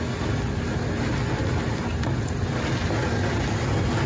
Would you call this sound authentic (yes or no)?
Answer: yes